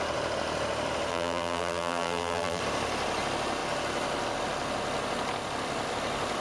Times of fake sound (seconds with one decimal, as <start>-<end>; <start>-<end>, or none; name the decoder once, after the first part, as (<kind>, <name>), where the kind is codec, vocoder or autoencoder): 1.1-2.6 (vocoder, BigVGAN v2)